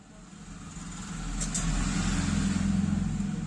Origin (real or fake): real